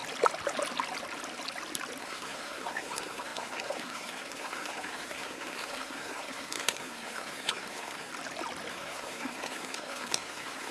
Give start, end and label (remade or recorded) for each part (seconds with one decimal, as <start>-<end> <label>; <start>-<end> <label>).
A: 0.0-2.0 recorded; 2.0-8.1 remade; 8.1-8.7 recorded; 8.7-10.7 remade